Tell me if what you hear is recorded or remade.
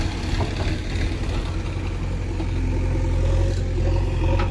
recorded